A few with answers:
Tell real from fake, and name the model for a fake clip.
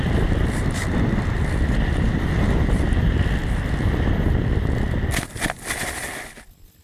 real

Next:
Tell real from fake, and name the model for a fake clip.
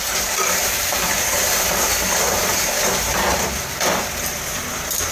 fake, vocoder, BigVGAN v2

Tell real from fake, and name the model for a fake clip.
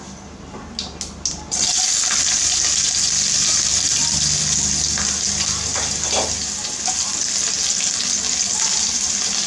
real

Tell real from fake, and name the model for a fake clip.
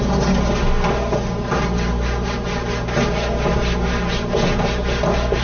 real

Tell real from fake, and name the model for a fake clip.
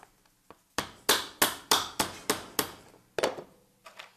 real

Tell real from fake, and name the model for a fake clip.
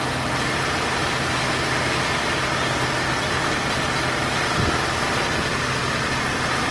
real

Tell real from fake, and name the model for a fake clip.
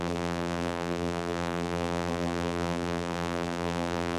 fake, vocoder, BigVGAN v2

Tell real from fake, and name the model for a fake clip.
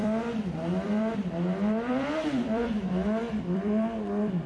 fake, vocoder, BigVGAN v2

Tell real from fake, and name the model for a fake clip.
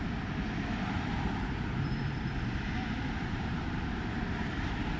fake, vocoder, BigVGAN v2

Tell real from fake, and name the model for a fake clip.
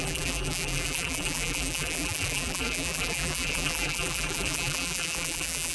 fake, vocoder, BigVGAN v2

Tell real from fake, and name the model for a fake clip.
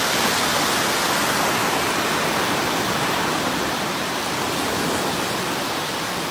real